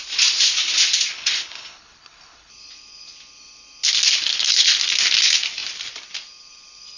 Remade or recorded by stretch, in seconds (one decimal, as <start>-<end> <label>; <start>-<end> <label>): 0.0-1.1 recorded; 1.1-2.5 remade; 2.5-4.3 recorded; 4.3-4.8 remade; 4.8-7.0 recorded